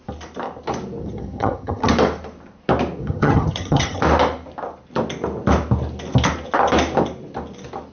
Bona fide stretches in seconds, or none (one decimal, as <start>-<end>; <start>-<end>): 0.0-1.0; 1.9-3.0; 4.0-7.9